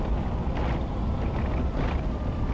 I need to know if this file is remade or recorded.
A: recorded